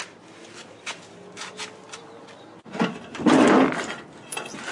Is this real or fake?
real